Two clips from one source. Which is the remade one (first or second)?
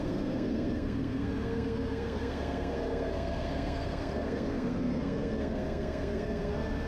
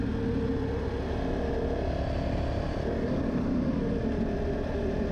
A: first